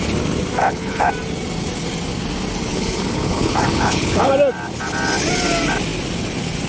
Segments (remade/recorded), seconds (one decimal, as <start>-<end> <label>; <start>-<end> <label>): 0.0-0.6 recorded; 0.6-1.1 remade; 1.1-2.7 recorded; 2.7-4.3 remade; 4.3-6.7 recorded